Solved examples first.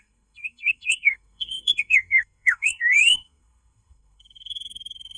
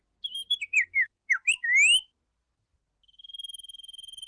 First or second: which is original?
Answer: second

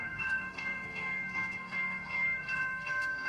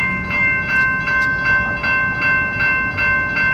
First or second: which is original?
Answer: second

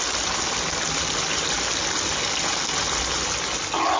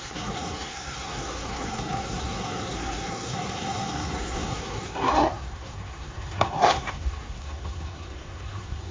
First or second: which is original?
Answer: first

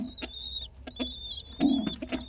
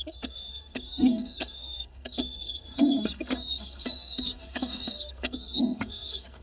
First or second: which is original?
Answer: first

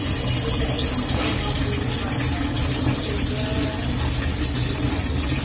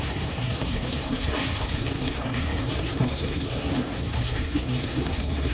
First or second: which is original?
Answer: first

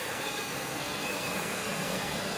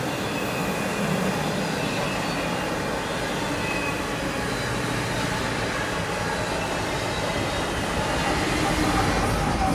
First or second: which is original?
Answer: second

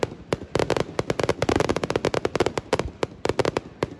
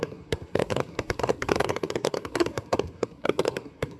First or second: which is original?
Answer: first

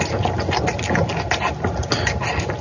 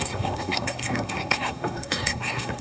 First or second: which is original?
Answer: first